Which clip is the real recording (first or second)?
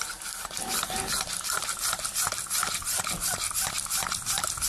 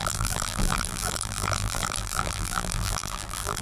first